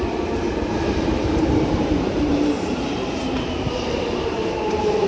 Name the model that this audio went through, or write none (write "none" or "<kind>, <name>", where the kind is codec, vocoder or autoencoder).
vocoder, BigVGAN v2